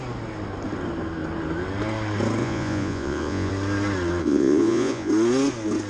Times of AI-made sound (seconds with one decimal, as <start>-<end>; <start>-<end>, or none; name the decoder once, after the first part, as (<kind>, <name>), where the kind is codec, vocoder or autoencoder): 2.4-3.5 (vocoder, Vocos); 4.2-5.1